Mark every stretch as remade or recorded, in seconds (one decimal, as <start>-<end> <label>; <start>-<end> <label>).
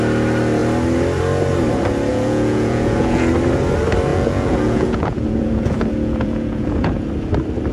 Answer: 0.0-2.1 recorded; 2.1-3.3 remade; 3.3-4.1 recorded; 4.1-7.1 remade; 7.1-7.7 recorded